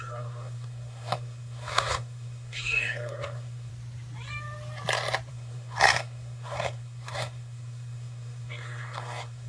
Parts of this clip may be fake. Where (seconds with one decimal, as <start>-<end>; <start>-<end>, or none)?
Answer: 0.0-3.7; 5.3-9.5